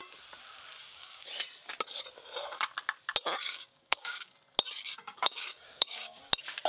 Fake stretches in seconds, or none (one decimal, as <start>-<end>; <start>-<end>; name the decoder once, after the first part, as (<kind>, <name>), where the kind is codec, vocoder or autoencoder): 0.8-1.3 (codec, DAC); 3.4-4.3; 4.9-6.2